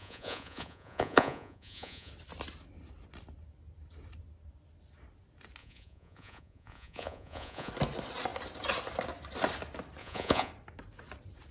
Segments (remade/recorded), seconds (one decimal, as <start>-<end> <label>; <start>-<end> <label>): 0.0-2.1 remade; 2.1-5.6 recorded; 5.6-7.7 remade; 7.7-10.0 recorded; 10.0-10.5 remade; 10.5-11.5 recorded